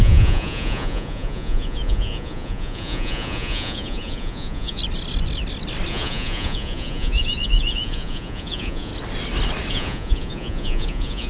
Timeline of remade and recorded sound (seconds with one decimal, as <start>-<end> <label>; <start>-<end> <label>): 0.0-4.8 remade; 4.8-5.9 recorded; 5.9-8.9 remade; 8.9-9.7 recorded; 9.7-11.3 remade